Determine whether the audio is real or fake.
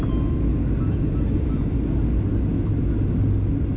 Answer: real